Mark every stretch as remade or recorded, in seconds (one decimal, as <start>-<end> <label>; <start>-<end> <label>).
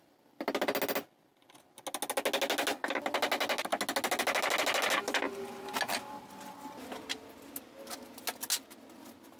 0.0-9.4 recorded